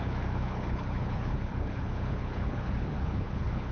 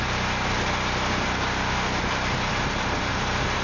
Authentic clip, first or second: second